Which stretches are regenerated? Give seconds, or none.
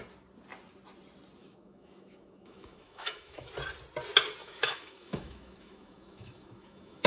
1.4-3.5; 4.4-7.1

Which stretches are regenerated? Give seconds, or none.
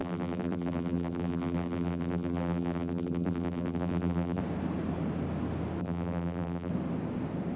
0.0-4.4; 5.8-6.7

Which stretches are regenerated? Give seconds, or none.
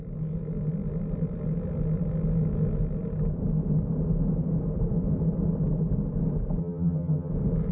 6.6-7.3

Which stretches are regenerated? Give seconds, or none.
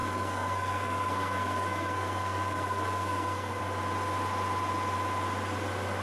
0.0-3.6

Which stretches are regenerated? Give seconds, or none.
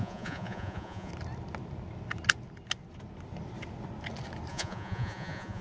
0.0-1.1; 4.5-5.6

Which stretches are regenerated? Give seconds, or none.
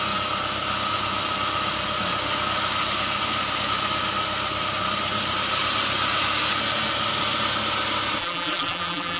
8.2-9.2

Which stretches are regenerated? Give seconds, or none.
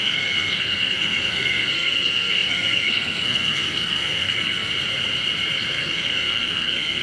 0.0-4.7; 5.7-7.0